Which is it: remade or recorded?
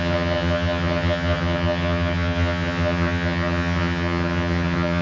remade